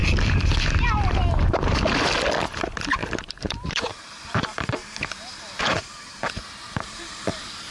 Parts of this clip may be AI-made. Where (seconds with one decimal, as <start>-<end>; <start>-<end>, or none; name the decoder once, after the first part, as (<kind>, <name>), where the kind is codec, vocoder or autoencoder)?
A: 3.0-7.7 (vocoder, BigVGAN v2)

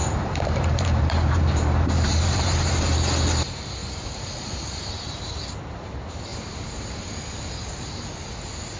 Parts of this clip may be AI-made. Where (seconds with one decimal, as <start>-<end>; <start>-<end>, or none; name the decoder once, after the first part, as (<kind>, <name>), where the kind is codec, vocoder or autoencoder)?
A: 0.0-2.7 (vocoder, BigVGAN v2); 3.8-4.8; 6.3-7.4

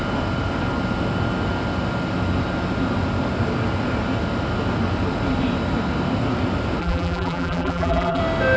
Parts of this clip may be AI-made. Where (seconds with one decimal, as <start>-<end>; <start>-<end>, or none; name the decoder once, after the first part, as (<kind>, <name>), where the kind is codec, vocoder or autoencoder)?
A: 6.8-8.2 (vocoder, BigVGAN v2)

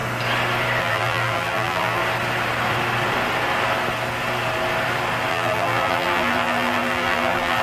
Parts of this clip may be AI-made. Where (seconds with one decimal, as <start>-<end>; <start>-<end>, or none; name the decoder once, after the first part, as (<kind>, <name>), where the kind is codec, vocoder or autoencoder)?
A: 0.8-2.0 (vocoder, BigVGAN v2); 5.3-7.6

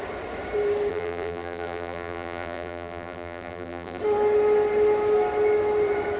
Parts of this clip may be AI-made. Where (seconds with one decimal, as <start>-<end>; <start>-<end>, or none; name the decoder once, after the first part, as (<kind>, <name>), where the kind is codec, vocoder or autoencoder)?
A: 0.9-4.0 (vocoder, BigVGAN v2)

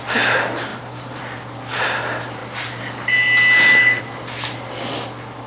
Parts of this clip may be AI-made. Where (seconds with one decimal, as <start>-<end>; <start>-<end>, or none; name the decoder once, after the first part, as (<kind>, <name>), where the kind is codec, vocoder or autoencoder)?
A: 0.7-1.2 (vocoder, BigVGAN v2)